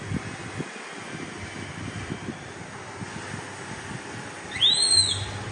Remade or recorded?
recorded